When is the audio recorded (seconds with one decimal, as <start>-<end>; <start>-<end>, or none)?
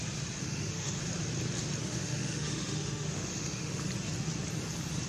0.0-0.4; 1.0-1.8; 3.8-5.1